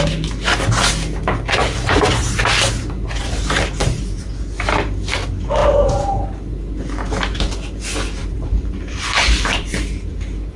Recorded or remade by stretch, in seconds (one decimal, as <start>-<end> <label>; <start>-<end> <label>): 0.0-1.6 recorded; 1.6-2.4 remade; 2.4-3.2 recorded; 3.2-4.3 remade; 4.3-5.6 recorded; 5.6-6.2 remade; 6.2-8.2 recorded; 8.2-10.1 remade; 10.1-10.6 recorded